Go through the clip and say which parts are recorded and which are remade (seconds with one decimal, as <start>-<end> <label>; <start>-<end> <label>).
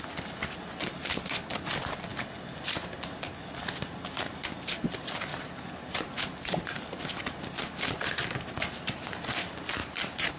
0.0-5.3 recorded; 5.3-7.2 remade; 7.2-9.8 recorded; 9.8-10.4 remade